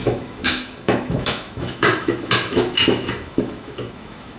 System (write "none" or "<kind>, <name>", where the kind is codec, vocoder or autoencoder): autoencoder, DAC-VAE